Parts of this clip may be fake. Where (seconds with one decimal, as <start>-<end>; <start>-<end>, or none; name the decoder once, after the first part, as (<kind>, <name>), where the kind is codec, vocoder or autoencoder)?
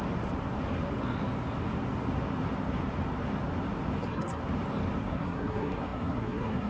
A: 4.0-4.4 (codec, SNAC); 5.0-6.7